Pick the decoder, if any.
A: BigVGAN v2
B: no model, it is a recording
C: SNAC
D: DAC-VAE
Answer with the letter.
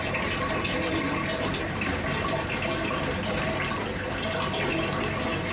B